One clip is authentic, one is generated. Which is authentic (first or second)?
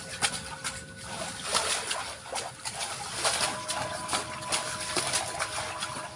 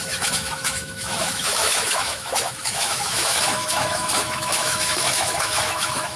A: first